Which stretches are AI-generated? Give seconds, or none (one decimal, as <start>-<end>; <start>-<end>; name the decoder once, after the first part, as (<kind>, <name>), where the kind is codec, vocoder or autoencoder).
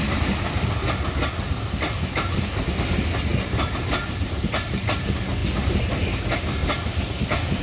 3.3-3.9 (vocoder, BigVGAN v2); 6.6-7.6